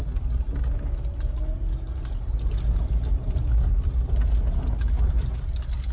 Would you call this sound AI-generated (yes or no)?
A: no